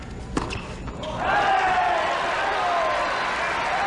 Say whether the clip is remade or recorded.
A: recorded